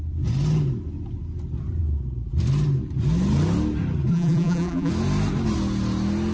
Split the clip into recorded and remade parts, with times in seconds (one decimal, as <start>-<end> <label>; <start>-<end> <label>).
0.0-4.1 recorded; 4.1-4.9 remade; 4.9-6.3 recorded